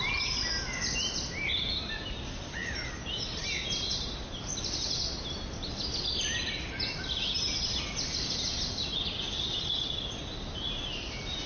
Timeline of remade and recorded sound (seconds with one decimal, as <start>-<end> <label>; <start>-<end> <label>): 0.0-11.5 recorded